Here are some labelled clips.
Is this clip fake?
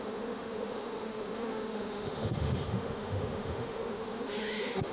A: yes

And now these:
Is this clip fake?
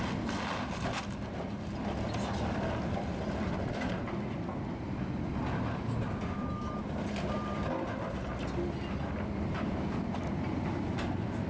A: no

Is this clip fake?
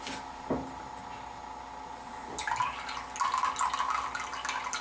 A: no